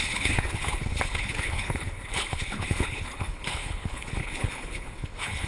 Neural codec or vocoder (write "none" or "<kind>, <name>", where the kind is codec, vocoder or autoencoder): codec, HILCodec